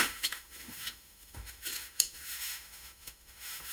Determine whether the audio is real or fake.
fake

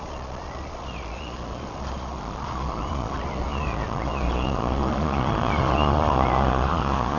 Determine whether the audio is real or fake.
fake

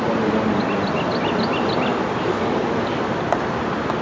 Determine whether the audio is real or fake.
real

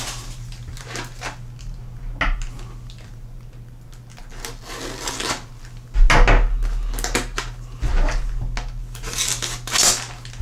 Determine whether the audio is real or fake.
real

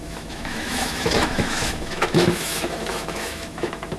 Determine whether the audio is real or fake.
fake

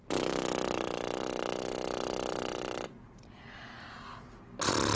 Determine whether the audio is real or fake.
real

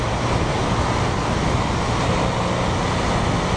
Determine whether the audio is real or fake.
real